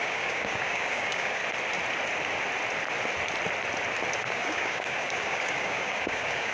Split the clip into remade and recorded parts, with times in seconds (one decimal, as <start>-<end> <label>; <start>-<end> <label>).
0.0-1.4 remade; 1.4-4.2 recorded; 4.2-6.5 remade

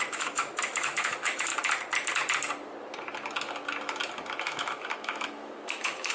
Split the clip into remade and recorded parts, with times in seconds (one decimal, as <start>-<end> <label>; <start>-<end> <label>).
0.0-1.5 remade; 1.5-4.4 recorded; 4.4-6.1 remade

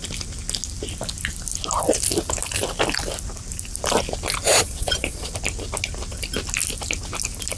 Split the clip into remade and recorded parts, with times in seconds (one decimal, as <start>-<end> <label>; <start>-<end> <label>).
0.0-4.5 recorded; 4.5-5.3 remade; 5.3-7.6 recorded

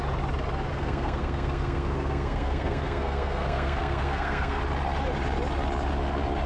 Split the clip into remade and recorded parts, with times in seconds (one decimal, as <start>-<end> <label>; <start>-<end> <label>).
0.0-0.7 recorded; 0.7-4.6 remade; 4.6-6.5 recorded

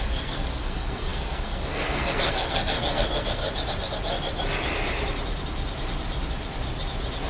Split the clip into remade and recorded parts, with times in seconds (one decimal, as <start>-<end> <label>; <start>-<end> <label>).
0.0-3.4 remade; 3.4-7.3 recorded